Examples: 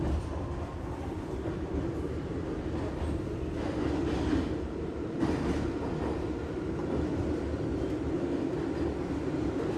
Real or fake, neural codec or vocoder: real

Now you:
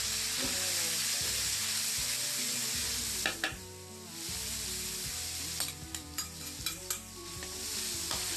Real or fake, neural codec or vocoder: real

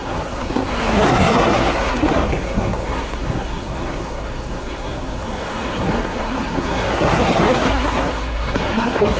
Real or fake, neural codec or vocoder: fake, codec, SNAC